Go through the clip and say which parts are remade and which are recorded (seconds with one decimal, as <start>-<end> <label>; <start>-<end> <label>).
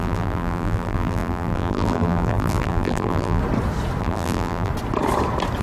0.0-3.4 remade; 3.4-4.0 recorded; 4.0-4.7 remade; 4.7-5.6 recorded